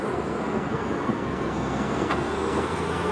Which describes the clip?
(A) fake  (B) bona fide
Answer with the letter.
A